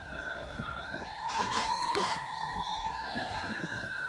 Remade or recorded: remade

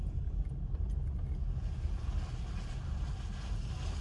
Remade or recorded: recorded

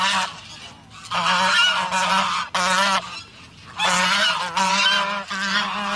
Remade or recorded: recorded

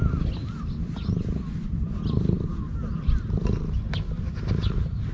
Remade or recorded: recorded